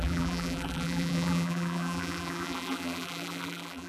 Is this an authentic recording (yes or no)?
no